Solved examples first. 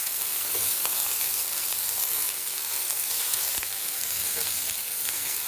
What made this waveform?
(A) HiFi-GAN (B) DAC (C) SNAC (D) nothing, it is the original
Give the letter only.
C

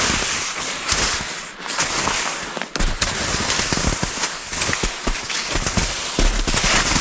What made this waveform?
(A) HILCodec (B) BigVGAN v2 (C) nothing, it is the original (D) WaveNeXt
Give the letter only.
C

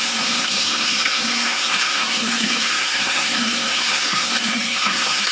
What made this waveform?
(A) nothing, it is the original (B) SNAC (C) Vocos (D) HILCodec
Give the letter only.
B